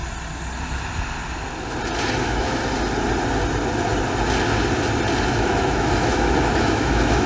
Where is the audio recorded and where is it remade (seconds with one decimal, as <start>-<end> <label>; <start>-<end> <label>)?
0.0-2.2 recorded; 2.2-2.6 remade; 2.6-5.3 recorded; 5.3-7.3 remade